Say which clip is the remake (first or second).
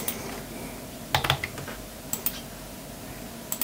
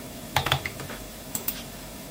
second